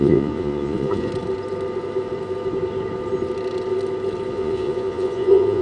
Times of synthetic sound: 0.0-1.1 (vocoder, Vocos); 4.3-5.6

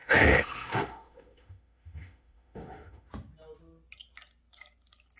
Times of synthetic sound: 0.0-3.1 (autoencoder, DAC-VAE)